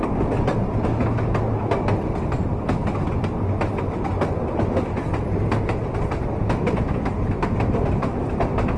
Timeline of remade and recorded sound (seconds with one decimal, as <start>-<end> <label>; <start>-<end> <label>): 0.0-8.8 recorded